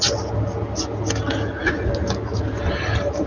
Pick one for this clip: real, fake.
real